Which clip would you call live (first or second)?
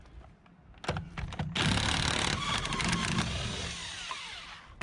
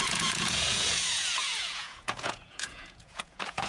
first